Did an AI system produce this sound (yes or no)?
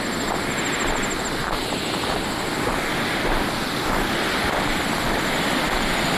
no